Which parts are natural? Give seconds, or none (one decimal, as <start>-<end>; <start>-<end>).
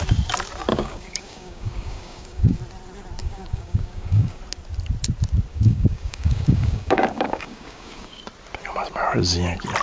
0.0-0.7; 2.6-3.2; 4.4-5.5; 8.2-9.8